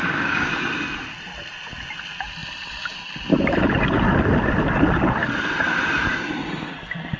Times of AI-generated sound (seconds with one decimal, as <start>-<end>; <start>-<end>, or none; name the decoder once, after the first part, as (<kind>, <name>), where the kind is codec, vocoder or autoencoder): 0.0-0.5 (codec, DAC)

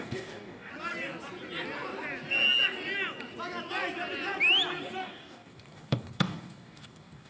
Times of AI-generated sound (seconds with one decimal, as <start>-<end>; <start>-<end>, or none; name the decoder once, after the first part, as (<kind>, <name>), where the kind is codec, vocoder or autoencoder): 0.0-0.7 (codec, DAC); 5.0-7.3

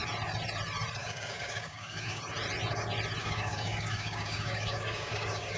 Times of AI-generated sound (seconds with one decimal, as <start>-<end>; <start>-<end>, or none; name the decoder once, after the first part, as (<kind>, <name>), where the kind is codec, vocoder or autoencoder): 1.0-2.2 (codec, DAC); 3.2-5.6

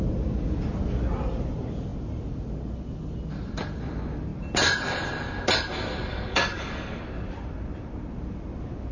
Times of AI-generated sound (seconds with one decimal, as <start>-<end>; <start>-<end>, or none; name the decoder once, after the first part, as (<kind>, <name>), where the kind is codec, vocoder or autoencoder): 6.1-7.0 (codec, DAC)

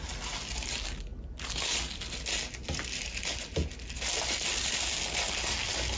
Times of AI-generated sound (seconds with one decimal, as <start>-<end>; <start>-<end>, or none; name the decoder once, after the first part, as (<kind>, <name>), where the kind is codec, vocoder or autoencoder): none

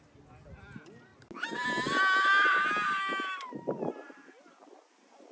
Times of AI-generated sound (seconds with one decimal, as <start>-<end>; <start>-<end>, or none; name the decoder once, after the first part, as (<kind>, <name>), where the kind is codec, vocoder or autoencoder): none

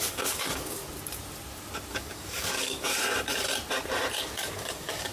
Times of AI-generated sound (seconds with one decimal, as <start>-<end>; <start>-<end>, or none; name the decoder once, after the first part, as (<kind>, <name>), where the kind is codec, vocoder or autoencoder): 0.0-0.8 (codec, DAC); 1.9-2.9; 4.2-5.1